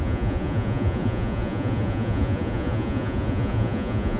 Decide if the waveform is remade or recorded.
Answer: remade